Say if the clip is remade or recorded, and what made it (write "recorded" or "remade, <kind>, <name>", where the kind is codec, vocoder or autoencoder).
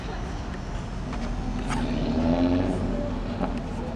recorded